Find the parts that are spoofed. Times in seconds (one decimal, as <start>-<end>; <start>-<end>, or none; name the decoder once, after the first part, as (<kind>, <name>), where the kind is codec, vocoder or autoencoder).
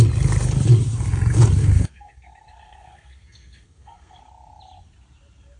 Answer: 1.6-4.2 (codec, SNAC)